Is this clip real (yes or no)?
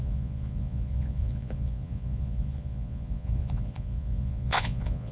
no